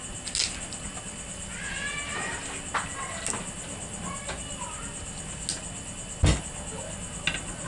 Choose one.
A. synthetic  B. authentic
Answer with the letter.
B